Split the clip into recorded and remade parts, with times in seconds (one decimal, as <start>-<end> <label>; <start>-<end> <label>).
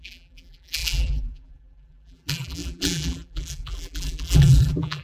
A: 0.0-5.0 remade